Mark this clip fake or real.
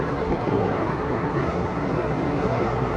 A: fake